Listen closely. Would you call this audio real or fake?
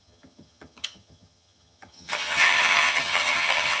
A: fake